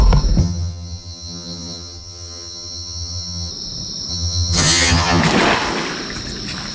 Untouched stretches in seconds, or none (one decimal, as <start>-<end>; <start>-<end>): 0.0-0.4; 3.5-4.1; 5.2-6.7